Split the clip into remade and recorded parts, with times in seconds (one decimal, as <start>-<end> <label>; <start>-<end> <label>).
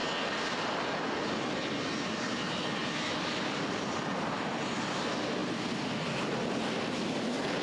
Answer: 0.0-2.8 recorded; 2.8-4.8 remade; 4.8-7.6 recorded